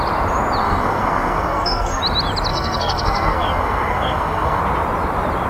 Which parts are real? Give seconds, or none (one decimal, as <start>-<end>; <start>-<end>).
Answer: 0.0-0.6; 2.0-2.5; 4.6-5.5